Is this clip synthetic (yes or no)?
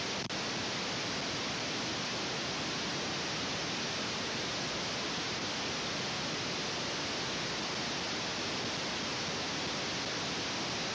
no